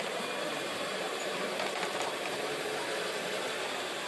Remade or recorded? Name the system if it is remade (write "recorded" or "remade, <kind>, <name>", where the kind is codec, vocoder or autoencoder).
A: remade, vocoder, BigVGAN v2